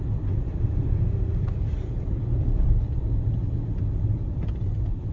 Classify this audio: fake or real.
fake